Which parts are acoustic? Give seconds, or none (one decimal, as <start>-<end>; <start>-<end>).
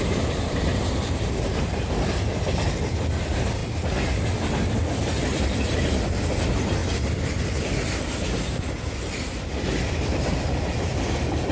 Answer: 3.6-4.9; 6.8-7.4